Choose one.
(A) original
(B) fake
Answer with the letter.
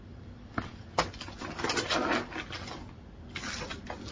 A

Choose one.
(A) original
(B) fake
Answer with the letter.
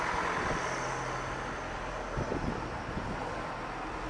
A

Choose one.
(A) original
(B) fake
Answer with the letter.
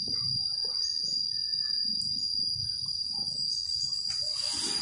A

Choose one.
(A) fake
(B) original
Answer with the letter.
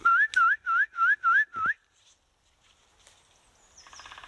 B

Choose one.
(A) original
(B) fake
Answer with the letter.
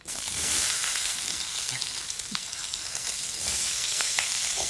B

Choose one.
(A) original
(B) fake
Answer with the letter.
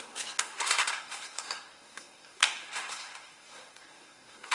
B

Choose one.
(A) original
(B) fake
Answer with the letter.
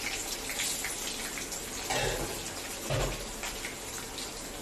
A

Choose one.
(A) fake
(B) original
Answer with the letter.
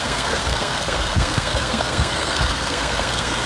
A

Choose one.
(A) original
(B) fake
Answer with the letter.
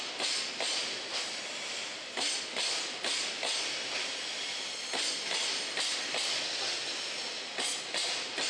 A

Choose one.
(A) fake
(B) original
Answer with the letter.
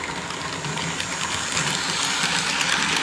B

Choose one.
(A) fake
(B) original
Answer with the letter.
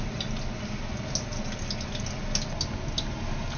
B